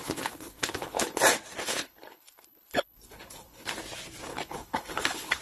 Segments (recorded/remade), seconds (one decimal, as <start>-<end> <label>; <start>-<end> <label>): 0.0-1.2 remade; 1.2-1.6 recorded; 1.6-3.7 remade; 3.7-4.3 recorded; 4.3-5.4 remade